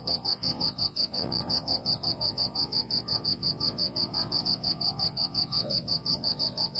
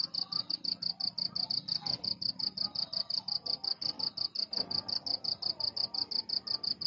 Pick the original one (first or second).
second